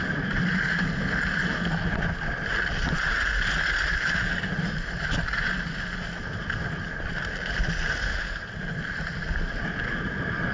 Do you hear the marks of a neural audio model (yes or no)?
no